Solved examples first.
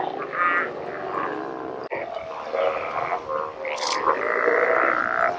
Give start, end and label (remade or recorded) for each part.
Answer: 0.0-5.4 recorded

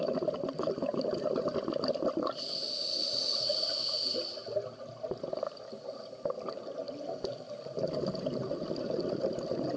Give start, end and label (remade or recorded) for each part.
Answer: 0.0-9.8 recorded

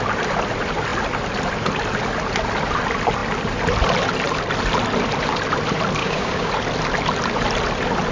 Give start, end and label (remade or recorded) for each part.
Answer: 0.0-6.0 recorded; 6.0-6.5 remade; 6.5-8.1 recorded

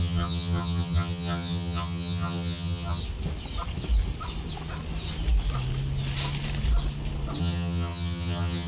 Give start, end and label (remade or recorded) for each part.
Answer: 0.0-3.0 remade; 3.0-7.4 recorded; 7.4-8.7 remade